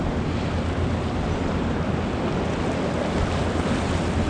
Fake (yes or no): no